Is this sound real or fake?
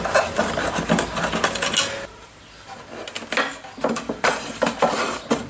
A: real